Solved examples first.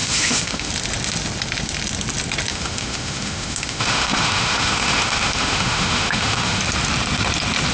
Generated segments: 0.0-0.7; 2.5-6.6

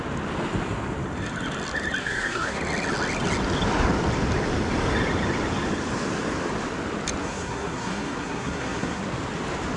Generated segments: 2.0-2.6; 7.2-9.0

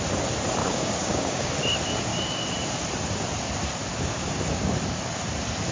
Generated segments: 0.6-1.5; 3.9-4.7

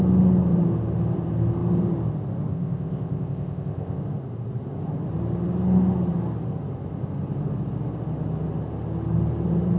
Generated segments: 2.5-4.0

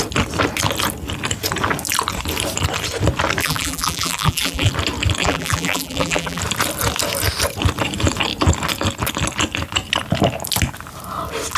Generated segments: 3.4-4.7; 5.2-6.4

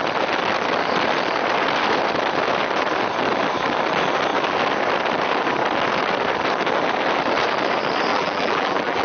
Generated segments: 8.1-9.0